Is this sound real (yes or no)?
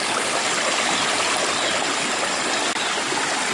yes